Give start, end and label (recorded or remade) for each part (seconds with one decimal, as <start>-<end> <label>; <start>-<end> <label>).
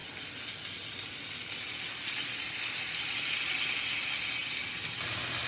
0.0-5.5 recorded